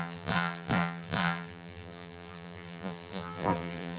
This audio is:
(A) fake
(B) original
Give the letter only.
A